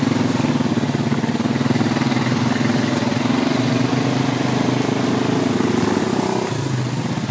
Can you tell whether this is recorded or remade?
recorded